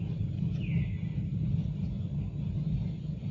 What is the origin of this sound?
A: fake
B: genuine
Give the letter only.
B